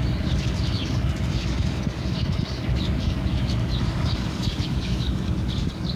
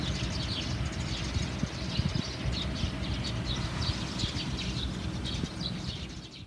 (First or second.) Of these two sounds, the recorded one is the second